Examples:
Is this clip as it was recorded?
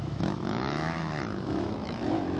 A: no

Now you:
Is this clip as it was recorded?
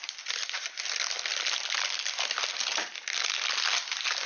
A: yes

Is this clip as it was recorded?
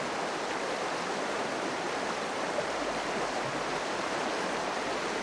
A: yes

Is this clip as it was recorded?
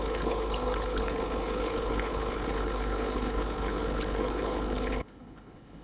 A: no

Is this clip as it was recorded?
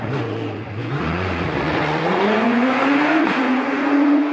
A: no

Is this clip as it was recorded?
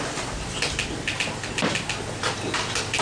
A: yes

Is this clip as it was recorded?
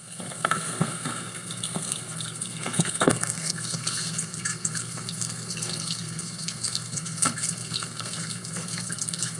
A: no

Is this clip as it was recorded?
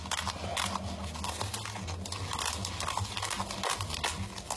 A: yes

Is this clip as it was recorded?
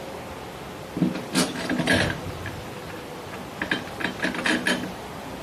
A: yes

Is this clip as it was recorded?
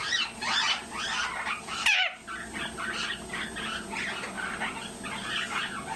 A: yes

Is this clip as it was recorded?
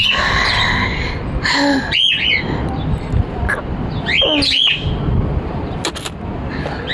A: yes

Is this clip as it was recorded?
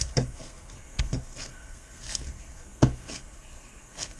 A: no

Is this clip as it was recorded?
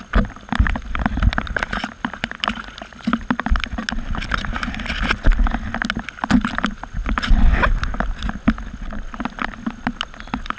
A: yes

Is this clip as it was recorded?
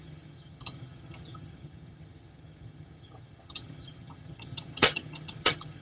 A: no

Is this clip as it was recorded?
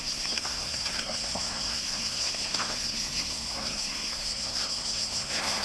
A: no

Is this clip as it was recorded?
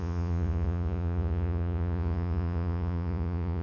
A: no